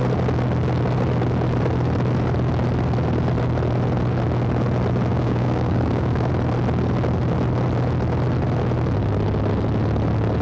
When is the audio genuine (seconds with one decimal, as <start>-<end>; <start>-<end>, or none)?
0.0-5.1; 6.3-10.4